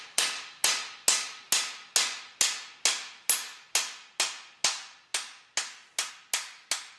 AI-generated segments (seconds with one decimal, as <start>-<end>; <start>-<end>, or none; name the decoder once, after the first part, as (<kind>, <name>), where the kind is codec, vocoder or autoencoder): none

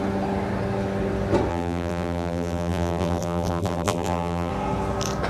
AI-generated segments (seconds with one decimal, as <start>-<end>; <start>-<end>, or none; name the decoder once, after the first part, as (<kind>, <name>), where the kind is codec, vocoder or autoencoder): 1.5-4.5 (vocoder, BigVGAN v2)

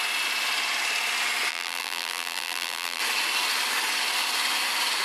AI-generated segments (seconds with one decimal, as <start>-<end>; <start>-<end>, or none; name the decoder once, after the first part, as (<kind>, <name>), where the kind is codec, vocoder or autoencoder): 1.5-3.0 (vocoder, BigVGAN v2)